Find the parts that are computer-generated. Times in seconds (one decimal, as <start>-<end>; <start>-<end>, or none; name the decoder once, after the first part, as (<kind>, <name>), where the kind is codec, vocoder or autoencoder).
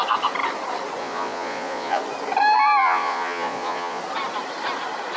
1.0-2.0 (vocoder, Vocos); 2.8-4.0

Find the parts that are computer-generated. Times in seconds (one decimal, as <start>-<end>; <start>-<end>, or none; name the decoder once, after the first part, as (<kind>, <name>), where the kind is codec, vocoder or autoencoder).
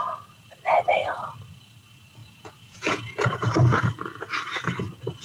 2.2-3.0 (vocoder, Vocos)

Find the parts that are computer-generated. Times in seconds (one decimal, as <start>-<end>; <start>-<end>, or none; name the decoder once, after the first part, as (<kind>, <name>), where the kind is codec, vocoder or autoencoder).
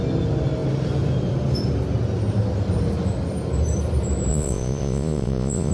4.3-5.7 (vocoder, Vocos)